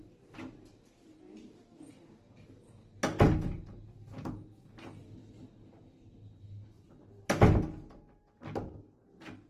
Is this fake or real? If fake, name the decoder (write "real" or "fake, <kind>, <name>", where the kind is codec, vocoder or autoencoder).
real